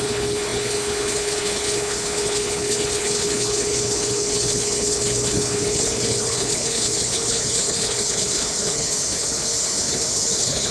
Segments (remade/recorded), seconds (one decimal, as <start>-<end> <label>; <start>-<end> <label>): 0.0-10.7 remade